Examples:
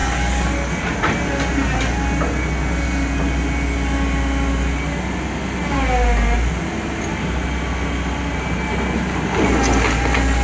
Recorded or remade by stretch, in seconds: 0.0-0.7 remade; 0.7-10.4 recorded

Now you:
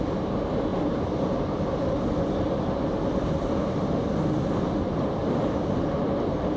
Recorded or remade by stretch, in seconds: 0.0-6.6 recorded

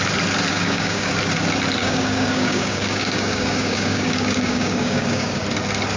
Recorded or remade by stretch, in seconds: 0.0-0.5 recorded; 0.5-1.1 remade; 1.1-1.8 recorded; 1.8-5.4 remade; 5.4-6.0 recorded

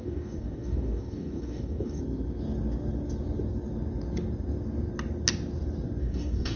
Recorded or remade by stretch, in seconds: 0.0-2.0 remade; 2.0-6.0 recorded; 6.0-6.6 remade

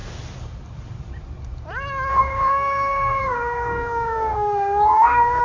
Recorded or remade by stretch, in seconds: 0.0-2.1 recorded; 2.1-5.4 remade